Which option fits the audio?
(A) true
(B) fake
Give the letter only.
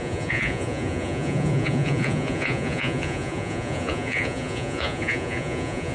B